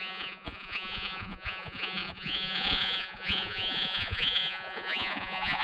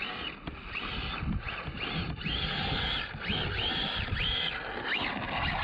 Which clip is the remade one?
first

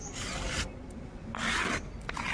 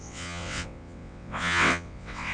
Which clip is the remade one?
second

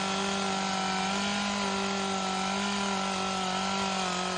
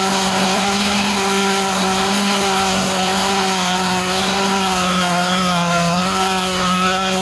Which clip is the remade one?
second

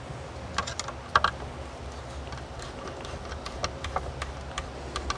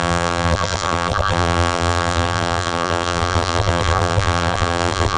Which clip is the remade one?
second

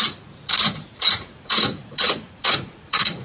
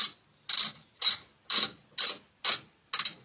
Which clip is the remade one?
first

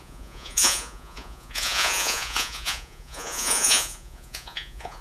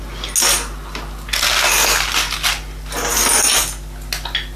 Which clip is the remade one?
first